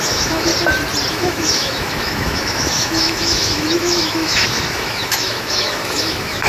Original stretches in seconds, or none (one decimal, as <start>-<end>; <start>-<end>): 0.5-1.1